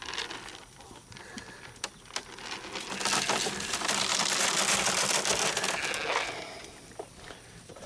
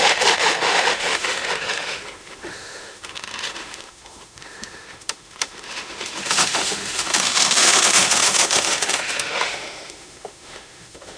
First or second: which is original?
first